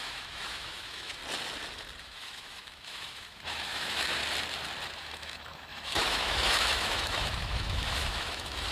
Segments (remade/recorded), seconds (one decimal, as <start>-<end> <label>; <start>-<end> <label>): 0.0-1.2 remade; 1.2-2.0 recorded; 2.0-4.2 remade; 4.2-5.0 recorded; 5.0-8.7 remade